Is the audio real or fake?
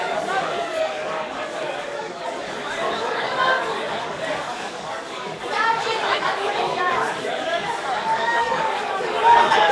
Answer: fake